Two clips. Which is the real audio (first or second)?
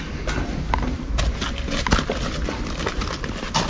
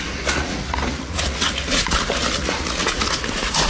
first